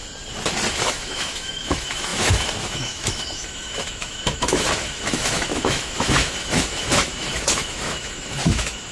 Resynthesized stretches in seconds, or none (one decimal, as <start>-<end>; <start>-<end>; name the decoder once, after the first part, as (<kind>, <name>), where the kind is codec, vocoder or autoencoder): 0.7-8.9 (autoencoder, DAC-VAE)